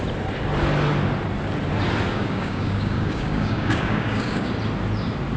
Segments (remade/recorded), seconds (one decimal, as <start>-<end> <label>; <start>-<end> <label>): 0.0-2.1 recorded; 2.1-4.5 remade; 4.5-5.4 recorded